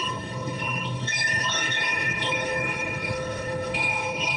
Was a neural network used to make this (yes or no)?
yes